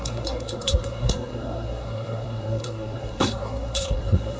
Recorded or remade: remade